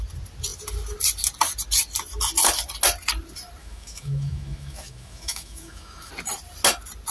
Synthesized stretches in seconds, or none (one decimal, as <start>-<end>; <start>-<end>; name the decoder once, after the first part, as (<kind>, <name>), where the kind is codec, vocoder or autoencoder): 3.6-6.1 (autoencoder, DAC-VAE)

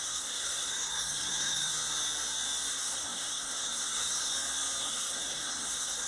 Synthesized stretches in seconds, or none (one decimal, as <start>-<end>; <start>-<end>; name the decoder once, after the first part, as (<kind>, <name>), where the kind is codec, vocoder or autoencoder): 0.0-1.7 (codec, SNAC); 2.7-4.3; 4.8-6.1

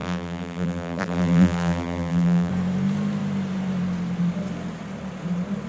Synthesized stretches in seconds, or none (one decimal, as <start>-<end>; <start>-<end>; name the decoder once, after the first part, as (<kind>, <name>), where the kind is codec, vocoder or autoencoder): 0.0-2.5 (vocoder, BigVGAN v2)

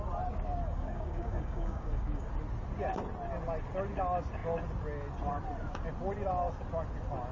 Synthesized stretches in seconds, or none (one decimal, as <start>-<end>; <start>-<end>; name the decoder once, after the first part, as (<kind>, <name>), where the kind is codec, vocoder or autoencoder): 0.6-2.3 (codec, DAC)

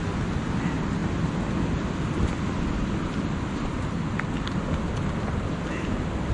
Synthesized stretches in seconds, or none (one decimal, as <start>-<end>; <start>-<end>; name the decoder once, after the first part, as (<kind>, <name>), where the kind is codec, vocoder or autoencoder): none

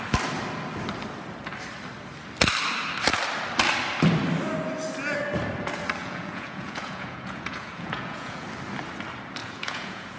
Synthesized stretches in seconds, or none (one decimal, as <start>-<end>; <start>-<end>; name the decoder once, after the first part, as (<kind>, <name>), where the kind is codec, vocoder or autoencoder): 6.0-8.5 (vocoder, Vocos); 9.4-10.2

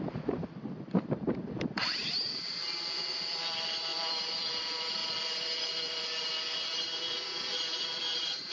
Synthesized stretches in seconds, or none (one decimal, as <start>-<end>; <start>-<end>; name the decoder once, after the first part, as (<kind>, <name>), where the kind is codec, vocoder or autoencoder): 0.0-8.5 (vocoder, BigVGAN v2)